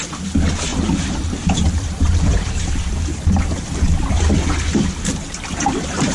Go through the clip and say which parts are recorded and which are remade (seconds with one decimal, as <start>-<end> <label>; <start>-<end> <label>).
0.0-0.7 recorded; 0.7-2.7 remade; 2.7-6.1 recorded